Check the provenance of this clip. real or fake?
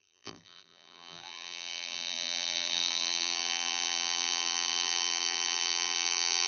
fake